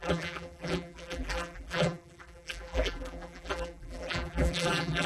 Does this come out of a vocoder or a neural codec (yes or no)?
yes